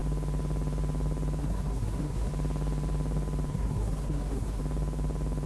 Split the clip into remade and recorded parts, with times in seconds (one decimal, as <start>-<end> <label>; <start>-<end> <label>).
0.0-1.4 recorded; 1.4-2.3 remade; 2.3-3.5 recorded; 3.5-4.6 remade; 4.6-5.5 recorded